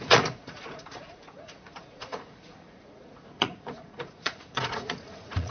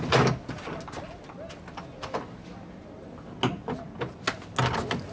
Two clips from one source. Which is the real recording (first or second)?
second